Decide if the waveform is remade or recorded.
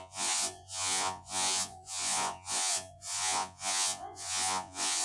remade